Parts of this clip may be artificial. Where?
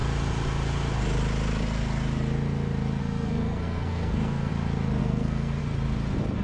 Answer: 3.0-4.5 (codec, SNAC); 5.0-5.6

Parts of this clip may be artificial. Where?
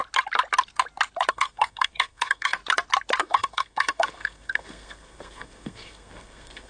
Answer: 1.3-2.6 (codec, SNAC); 3.2-6.7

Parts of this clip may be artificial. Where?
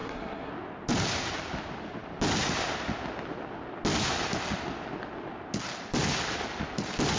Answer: 0.0-0.5 (codec, SNAC)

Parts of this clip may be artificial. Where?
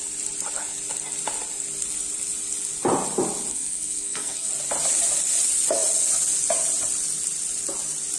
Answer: 3.5-4.5 (codec, SNAC)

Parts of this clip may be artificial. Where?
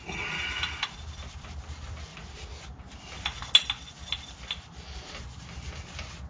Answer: none